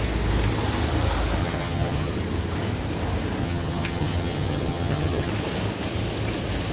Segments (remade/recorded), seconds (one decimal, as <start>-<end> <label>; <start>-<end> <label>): 0.0-1.4 recorded; 1.4-2.1 remade; 2.1-3.4 recorded; 3.4-5.3 remade; 5.3-6.7 recorded